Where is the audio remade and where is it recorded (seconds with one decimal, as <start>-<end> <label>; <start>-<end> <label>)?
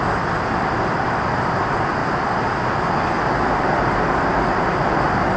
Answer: 0.0-2.0 remade; 2.0-5.4 recorded